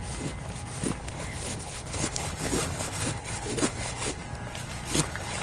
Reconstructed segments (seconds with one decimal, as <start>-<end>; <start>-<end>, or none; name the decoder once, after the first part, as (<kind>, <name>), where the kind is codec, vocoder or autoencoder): 1.0-4.2 (codec, HILCodec)